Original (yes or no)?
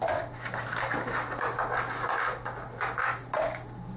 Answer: yes